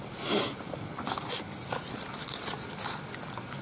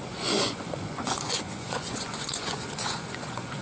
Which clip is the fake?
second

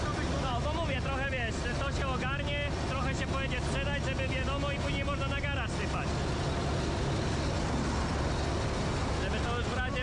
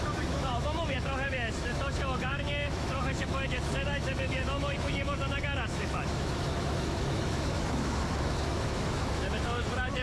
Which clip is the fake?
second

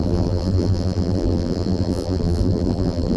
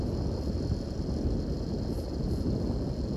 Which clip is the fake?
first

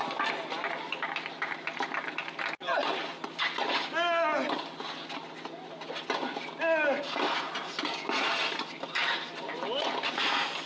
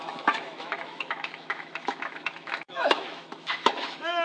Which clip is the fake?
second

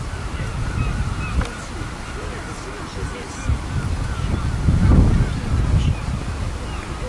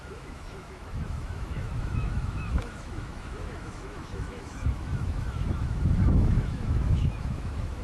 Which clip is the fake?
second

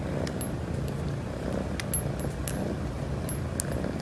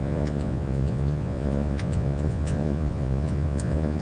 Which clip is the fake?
second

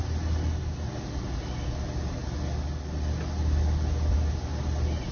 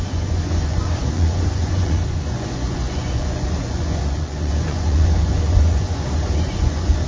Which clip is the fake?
second